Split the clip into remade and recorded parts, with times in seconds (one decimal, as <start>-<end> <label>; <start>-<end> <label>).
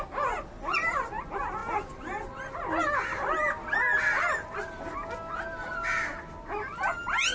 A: 0.0-7.3 recorded